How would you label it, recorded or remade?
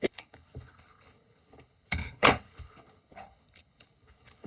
remade